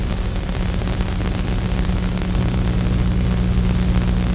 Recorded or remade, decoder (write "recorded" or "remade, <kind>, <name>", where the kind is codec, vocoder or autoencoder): recorded